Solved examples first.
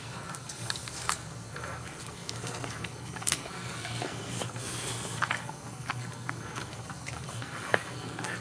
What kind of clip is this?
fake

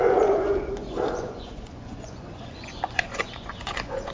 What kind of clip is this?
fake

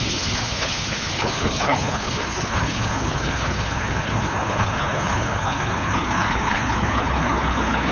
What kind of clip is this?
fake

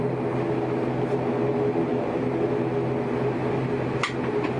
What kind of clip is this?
real